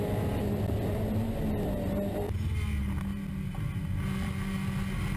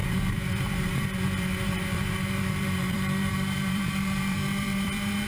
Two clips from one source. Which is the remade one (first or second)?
second